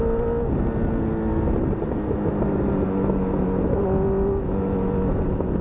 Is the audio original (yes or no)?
yes